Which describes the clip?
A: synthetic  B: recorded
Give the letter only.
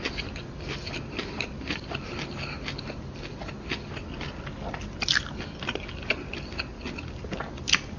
B